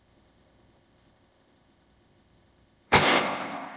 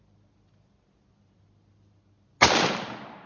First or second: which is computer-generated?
first